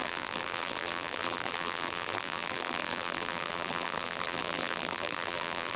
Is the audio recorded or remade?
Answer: remade